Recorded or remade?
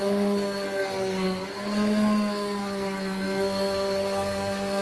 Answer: remade